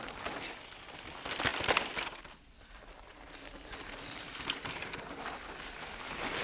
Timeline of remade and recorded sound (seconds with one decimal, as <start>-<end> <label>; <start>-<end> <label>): 0.0-6.4 recorded